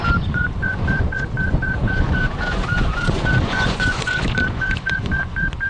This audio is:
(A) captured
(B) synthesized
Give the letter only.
B